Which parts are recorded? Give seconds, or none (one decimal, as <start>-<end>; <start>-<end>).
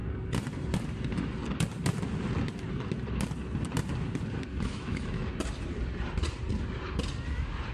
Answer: 0.0-4.5; 5.3-7.7